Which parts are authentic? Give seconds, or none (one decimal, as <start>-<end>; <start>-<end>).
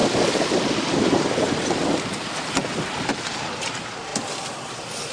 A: 0.0-5.1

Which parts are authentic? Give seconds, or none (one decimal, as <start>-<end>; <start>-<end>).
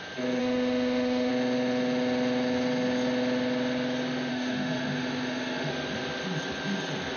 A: 0.0-0.4; 1.3-4.3; 5.7-7.2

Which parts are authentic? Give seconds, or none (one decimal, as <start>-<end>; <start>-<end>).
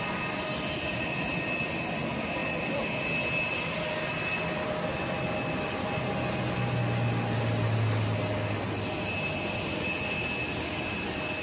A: 0.0-11.4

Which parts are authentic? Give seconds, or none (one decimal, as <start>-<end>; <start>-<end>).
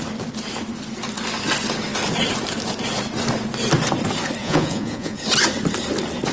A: 0.0-4.4; 5.2-6.3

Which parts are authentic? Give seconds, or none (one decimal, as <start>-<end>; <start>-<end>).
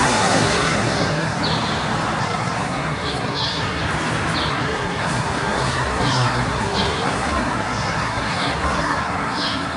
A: 1.4-2.2; 3.8-4.5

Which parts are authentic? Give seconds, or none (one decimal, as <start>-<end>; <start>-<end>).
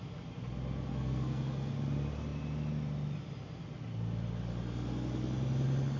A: 0.0-0.9; 1.7-6.0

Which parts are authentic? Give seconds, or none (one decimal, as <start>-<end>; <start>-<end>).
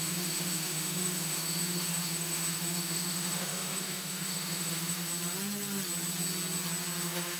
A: 5.1-7.0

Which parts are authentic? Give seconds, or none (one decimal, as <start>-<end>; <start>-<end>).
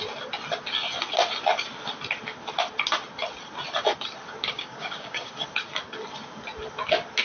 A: 0.0-4.4; 5.3-7.2